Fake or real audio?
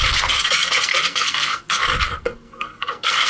fake